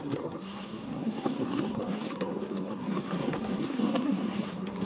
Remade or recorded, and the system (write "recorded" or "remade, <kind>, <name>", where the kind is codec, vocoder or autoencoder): remade, codec, SNAC